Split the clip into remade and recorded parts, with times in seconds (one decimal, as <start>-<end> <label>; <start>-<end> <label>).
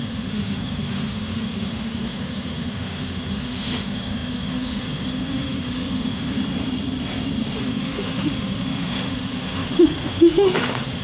0.0-6.3 remade; 6.3-7.6 recorded; 7.6-11.0 remade